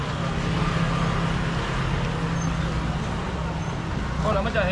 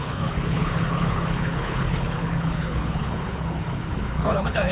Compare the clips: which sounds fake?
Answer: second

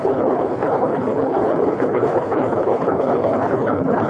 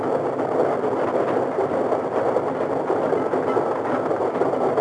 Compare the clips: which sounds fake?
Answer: first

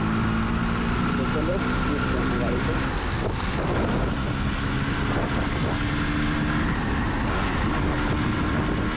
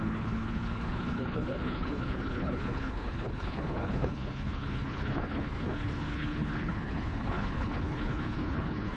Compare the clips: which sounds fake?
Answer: second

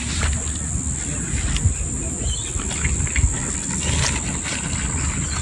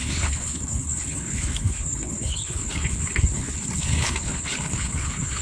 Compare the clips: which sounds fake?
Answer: second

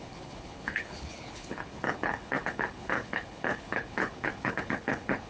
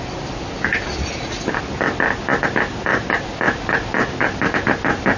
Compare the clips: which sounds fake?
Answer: first